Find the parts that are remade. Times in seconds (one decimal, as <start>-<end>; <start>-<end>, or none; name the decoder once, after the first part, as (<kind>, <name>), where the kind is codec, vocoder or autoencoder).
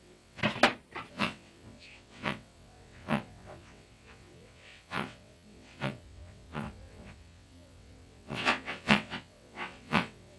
0.0-0.4 (vocoder, WaveNeXt); 1.1-10.4